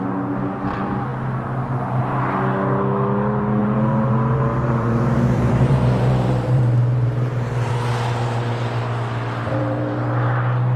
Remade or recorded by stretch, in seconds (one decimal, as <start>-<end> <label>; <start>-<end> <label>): 0.0-3.6 recorded; 3.6-7.7 remade; 7.7-10.8 recorded